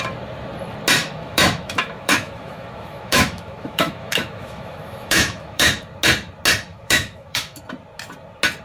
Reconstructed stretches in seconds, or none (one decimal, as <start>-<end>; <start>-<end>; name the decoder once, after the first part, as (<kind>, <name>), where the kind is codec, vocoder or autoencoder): 1.0-5.8 (autoencoder, DAC-VAE); 6.7-7.6